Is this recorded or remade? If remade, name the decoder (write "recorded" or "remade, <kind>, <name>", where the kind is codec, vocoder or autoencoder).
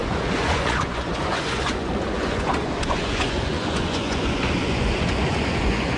remade, vocoder, Vocos